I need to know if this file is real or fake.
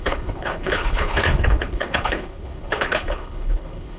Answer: fake